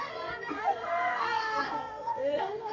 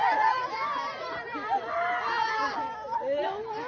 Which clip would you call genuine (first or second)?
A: second